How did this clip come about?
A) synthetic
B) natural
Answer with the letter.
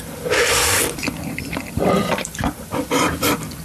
A